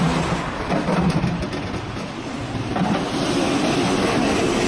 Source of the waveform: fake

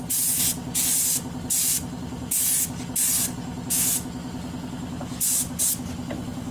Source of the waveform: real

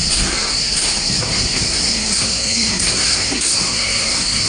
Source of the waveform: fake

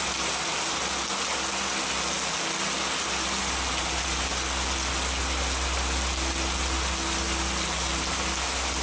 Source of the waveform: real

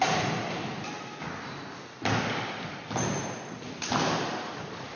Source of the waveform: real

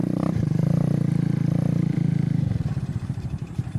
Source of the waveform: fake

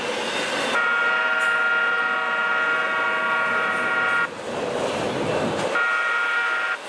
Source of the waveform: real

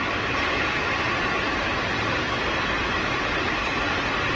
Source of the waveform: real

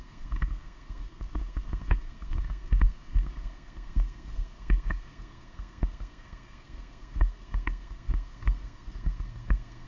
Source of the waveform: fake